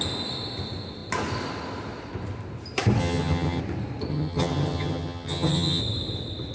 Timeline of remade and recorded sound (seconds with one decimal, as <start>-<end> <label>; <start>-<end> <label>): 0.0-3.0 recorded; 3.0-3.6 remade; 3.6-4.1 recorded; 4.1-5.8 remade; 5.8-6.5 recorded